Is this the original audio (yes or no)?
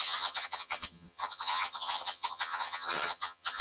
no